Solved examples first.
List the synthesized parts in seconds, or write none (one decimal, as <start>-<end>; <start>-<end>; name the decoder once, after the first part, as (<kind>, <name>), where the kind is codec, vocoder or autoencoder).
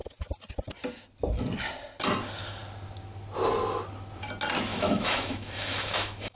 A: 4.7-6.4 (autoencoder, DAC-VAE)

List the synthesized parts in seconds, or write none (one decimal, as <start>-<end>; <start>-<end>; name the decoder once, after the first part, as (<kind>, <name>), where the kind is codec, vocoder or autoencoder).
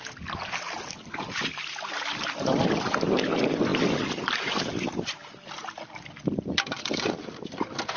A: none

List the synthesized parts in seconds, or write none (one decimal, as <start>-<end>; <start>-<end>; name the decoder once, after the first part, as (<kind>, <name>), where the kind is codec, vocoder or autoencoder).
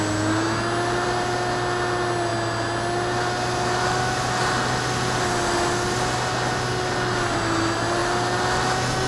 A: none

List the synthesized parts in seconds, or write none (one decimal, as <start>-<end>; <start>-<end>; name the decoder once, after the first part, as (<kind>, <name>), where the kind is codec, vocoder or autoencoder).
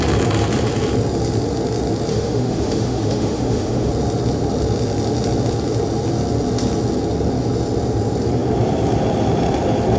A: 2.1-3.9 (autoencoder, DAC-VAE)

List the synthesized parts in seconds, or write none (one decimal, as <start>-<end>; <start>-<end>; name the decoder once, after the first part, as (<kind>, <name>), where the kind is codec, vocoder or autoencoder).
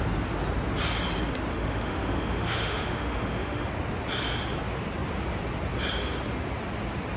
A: 1.5-3.7 (autoencoder, DAC-VAE)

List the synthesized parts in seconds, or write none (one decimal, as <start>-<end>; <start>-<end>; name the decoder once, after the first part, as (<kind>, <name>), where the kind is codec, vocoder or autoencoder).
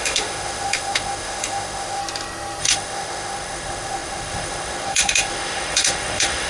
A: 0.0-2.0 (autoencoder, DAC-VAE); 2.6-6.5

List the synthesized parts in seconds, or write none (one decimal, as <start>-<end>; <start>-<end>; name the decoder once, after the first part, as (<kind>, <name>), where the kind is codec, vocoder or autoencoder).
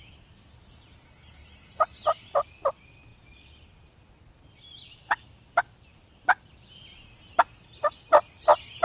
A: none